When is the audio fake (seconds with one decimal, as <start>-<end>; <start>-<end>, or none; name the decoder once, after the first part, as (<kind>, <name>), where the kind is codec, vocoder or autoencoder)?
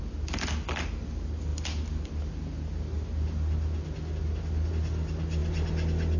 none